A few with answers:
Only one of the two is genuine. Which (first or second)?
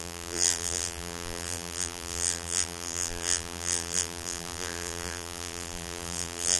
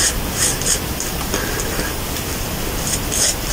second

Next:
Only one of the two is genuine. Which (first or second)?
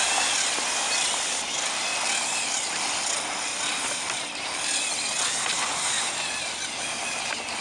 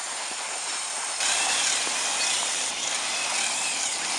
first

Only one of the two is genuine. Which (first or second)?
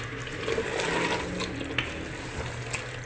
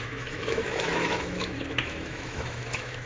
first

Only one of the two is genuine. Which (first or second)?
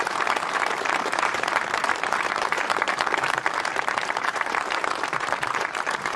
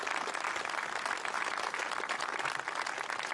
second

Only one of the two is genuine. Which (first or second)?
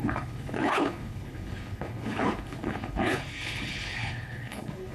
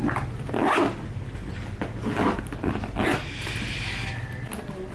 second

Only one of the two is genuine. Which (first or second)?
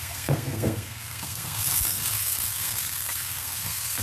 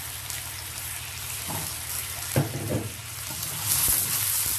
second